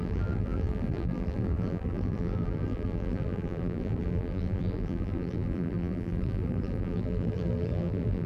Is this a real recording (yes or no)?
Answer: no